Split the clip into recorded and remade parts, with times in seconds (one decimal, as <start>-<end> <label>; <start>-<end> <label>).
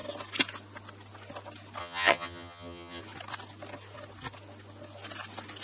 0.0-1.8 recorded; 1.8-3.0 remade; 3.0-5.6 recorded